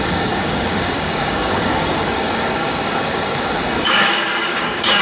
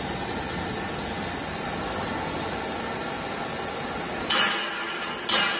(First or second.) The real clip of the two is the second